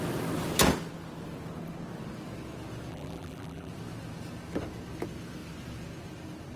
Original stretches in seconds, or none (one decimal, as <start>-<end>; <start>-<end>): 0.0-2.9; 3.7-6.6